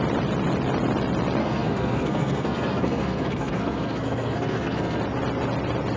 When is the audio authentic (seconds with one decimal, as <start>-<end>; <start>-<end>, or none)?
0.0-1.4; 5.0-6.0